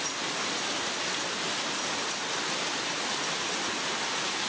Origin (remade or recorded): recorded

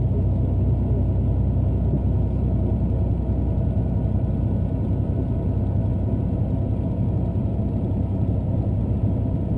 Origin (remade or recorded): recorded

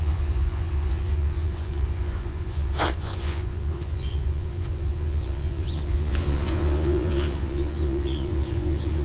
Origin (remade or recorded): remade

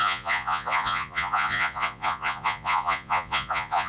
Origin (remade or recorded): remade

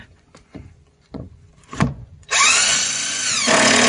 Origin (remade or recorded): remade